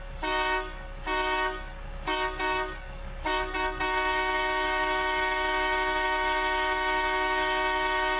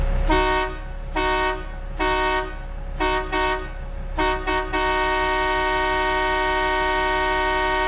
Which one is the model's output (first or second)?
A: first